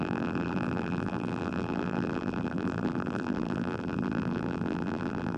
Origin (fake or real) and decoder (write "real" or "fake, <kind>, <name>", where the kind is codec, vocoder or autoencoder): fake, vocoder, BigVGAN v2